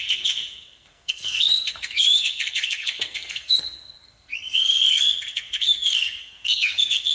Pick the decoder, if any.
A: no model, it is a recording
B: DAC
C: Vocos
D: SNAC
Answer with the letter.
D